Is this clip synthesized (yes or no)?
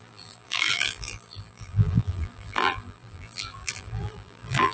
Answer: yes